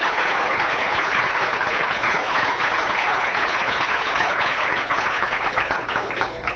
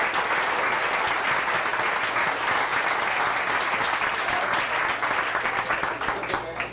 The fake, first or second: first